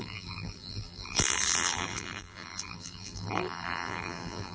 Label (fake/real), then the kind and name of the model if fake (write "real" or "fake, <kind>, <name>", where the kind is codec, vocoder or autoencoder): fake, vocoder, BigVGAN v2